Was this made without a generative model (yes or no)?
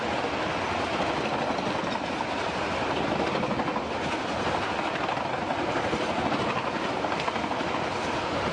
yes